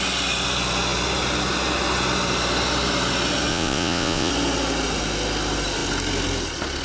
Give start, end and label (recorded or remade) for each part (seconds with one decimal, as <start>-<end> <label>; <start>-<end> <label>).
0.0-3.5 recorded; 3.5-4.3 remade; 4.3-6.8 recorded